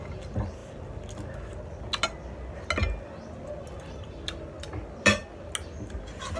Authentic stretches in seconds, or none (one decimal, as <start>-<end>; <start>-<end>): 0.0-6.4